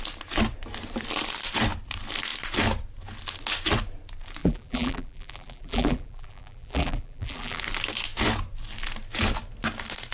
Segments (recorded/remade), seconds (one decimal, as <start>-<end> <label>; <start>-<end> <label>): 0.0-4.4 recorded; 4.4-7.6 remade; 7.6-10.1 recorded